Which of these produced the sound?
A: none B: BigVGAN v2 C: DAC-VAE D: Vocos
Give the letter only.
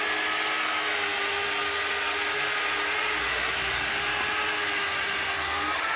A